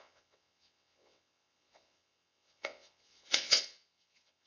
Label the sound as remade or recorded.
remade